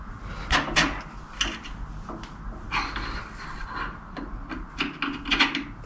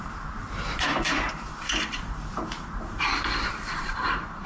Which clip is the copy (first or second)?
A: second